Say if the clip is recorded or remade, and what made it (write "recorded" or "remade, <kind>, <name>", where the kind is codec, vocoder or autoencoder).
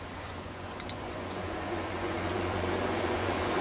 remade, vocoder, Vocos